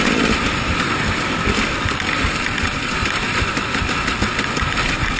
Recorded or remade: remade